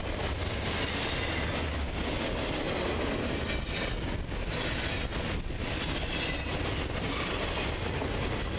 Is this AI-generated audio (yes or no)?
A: no